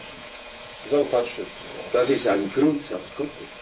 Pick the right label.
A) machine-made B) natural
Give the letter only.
A